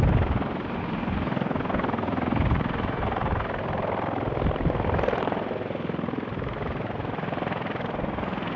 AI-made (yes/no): no